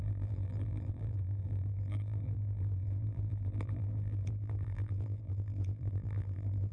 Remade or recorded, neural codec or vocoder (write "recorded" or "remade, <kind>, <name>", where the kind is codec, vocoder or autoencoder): remade, vocoder, BigVGAN v2